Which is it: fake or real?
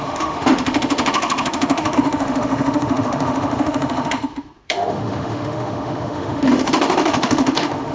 fake